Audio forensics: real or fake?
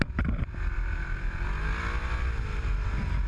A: real